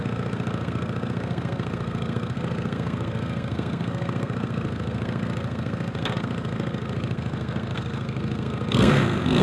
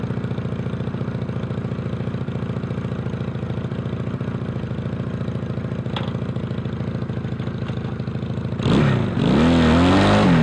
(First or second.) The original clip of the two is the second